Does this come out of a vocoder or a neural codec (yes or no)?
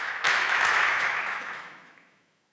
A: yes